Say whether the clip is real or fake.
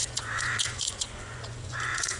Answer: fake